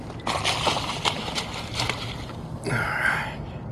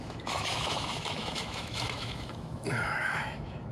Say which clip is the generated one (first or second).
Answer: second